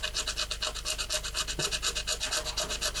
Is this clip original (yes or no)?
yes